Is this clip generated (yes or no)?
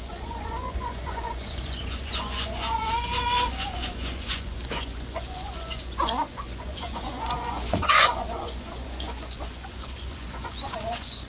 yes